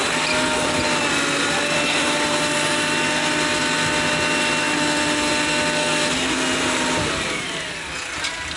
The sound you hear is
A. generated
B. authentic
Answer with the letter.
B